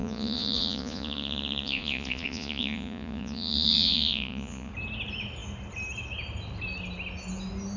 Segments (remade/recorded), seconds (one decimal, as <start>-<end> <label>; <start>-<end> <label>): 0.0-4.7 remade; 4.7-7.8 recorded